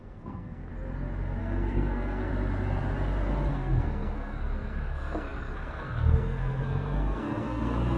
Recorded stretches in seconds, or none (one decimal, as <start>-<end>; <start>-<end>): 0.7-1.4; 2.3-3.5